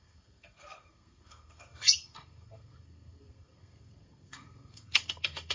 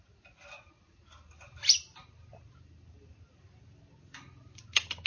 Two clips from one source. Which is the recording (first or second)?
second